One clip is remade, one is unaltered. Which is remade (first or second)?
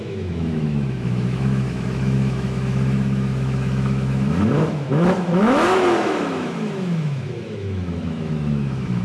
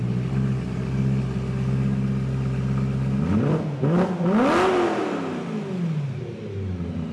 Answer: first